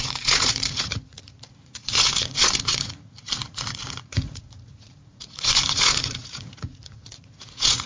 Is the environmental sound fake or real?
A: fake